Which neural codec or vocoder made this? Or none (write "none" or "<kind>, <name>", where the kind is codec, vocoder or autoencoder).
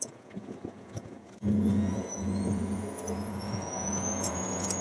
vocoder, Vocos